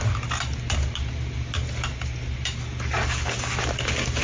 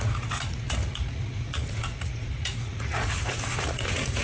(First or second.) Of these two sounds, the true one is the first